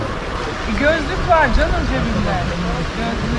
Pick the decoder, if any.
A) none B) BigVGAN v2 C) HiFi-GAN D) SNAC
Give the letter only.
A